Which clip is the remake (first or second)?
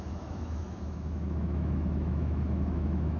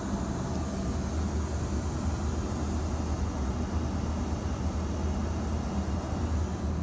first